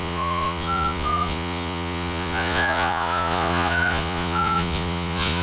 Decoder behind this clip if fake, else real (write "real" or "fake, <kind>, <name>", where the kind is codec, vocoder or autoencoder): fake, vocoder, Vocos